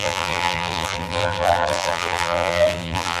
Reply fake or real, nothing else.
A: fake